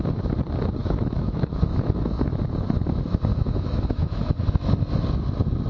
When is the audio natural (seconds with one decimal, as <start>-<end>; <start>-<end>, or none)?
0.0-0.8; 2.1-3.3; 4.3-5.7